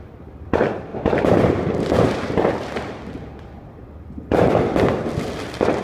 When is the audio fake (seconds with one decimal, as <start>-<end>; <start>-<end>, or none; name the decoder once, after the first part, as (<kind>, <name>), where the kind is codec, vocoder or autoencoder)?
0.9-2.3 (vocoder, BigVGAN v2)